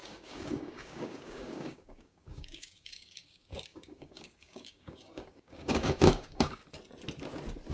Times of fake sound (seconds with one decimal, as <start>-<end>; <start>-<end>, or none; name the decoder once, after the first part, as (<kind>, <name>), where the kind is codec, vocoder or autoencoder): 0.0-6.6 (codec, DAC)